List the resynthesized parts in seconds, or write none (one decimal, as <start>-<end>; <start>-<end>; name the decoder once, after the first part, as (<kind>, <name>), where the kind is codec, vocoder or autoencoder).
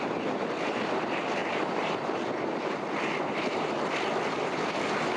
1.4-2.1 (vocoder, BigVGAN v2)